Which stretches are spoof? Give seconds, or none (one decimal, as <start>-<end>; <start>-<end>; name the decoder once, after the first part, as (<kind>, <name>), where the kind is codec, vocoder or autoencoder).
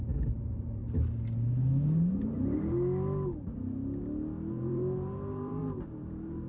0.0-0.8 (vocoder, BigVGAN v2); 4.5-6.5